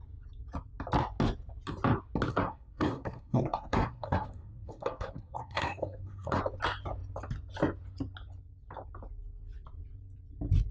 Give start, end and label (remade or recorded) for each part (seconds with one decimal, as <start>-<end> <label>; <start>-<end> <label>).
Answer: 0.0-2.3 recorded; 2.3-6.4 remade; 6.4-10.7 recorded